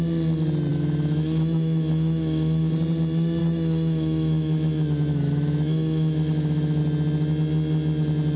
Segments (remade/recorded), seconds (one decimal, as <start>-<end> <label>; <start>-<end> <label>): 0.0-0.7 recorded; 0.7-2.7 remade; 2.7-3.4 recorded; 3.4-6.8 remade; 6.8-8.4 recorded